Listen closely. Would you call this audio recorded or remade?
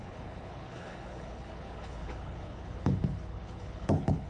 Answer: remade